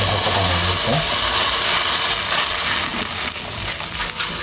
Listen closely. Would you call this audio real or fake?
real